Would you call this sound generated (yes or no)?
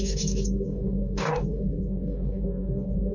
yes